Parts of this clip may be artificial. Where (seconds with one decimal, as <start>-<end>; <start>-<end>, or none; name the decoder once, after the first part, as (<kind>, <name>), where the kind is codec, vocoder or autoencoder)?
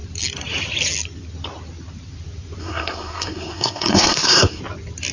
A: 2.6-4.6 (codec, SNAC)